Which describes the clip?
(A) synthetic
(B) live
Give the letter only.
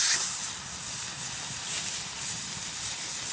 B